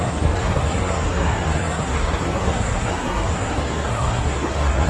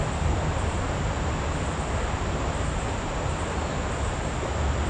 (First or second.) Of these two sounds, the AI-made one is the first